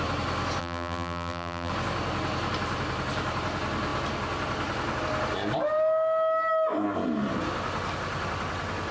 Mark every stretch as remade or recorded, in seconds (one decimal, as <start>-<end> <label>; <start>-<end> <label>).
0.0-0.6 recorded; 0.6-1.7 remade; 1.7-8.9 recorded